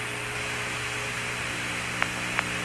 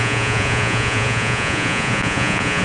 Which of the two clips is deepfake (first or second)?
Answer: second